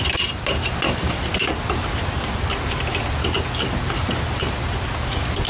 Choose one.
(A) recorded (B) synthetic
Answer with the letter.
A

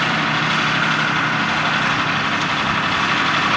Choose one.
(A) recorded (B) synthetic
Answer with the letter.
A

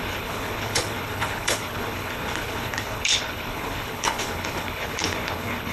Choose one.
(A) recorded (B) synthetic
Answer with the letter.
B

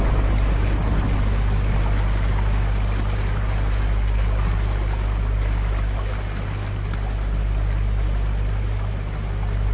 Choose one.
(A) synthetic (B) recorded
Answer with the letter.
B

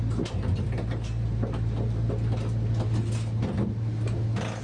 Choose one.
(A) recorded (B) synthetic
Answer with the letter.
A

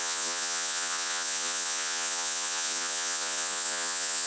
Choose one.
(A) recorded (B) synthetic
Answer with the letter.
B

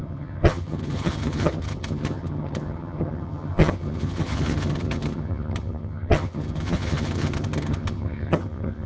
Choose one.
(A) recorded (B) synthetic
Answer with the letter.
B